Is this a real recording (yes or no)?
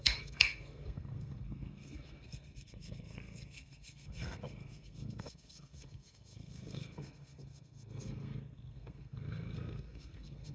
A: no